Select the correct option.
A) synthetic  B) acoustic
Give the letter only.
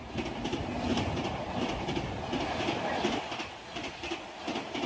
B